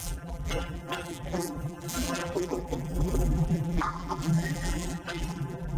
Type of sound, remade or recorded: remade